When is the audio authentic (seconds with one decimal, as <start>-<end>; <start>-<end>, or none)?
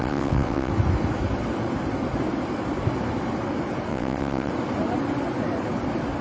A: 0.7-3.9; 4.5-6.2